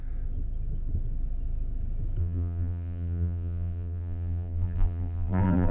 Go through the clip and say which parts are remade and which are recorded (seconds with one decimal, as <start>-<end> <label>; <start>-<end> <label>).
0.0-2.2 recorded; 2.2-5.7 remade